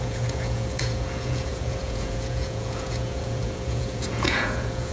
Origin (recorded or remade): remade